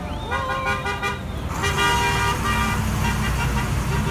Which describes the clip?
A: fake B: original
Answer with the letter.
B